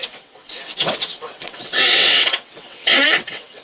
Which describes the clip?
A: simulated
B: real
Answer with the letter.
A